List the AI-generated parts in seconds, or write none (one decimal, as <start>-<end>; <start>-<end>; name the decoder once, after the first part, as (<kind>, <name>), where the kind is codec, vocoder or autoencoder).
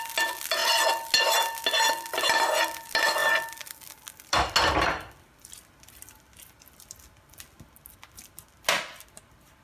none